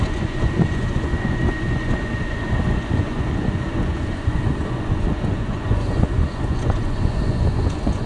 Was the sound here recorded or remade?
remade